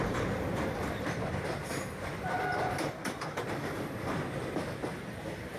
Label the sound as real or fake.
fake